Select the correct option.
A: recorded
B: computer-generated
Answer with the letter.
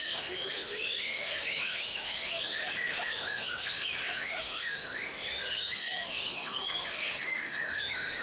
B